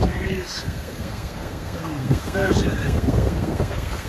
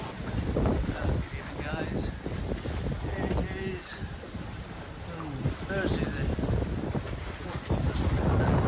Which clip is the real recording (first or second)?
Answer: second